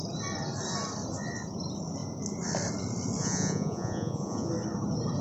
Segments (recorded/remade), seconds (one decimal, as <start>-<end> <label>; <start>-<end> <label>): 0.0-3.2 recorded; 3.2-4.5 remade; 4.5-5.2 recorded